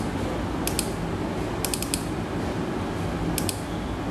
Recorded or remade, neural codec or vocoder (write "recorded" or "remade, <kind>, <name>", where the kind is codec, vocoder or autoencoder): recorded